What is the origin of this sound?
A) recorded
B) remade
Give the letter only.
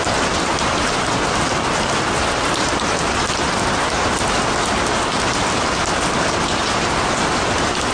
A